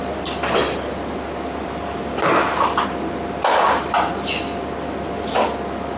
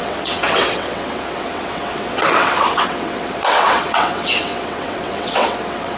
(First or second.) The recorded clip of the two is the first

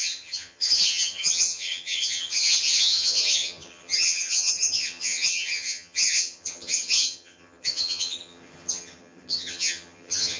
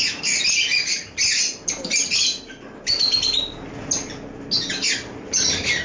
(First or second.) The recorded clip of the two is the second